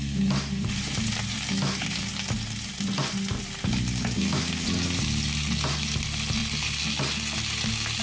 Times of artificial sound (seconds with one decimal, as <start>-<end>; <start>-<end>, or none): none

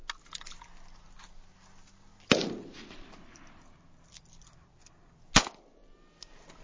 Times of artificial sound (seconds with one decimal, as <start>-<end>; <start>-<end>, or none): none

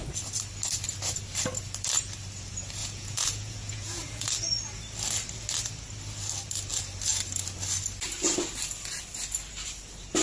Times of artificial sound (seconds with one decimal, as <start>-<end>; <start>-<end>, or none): 2.8-4.3

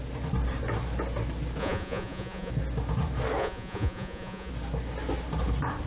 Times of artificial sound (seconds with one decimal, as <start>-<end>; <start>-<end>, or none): 1.6-2.5; 3.4-4.5